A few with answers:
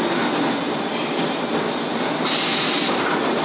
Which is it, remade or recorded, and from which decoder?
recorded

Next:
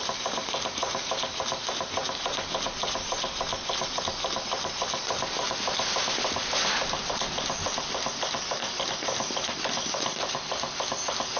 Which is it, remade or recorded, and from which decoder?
recorded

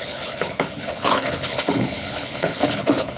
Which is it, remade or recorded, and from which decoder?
remade, codec, HILCodec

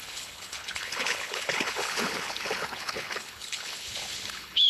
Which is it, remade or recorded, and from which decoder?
remade, codec, HILCodec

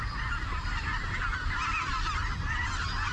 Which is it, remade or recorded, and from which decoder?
recorded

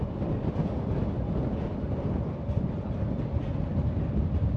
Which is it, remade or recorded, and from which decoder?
recorded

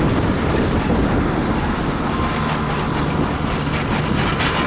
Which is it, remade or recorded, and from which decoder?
recorded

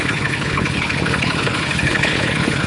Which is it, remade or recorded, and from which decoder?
remade, codec, HILCodec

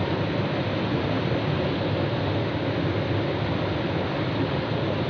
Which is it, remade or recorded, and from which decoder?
recorded